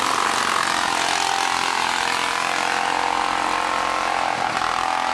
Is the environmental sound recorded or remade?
recorded